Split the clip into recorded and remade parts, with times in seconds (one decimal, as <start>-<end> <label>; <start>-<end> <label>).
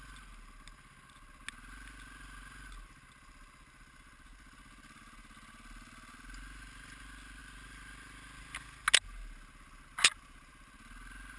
0.0-11.4 recorded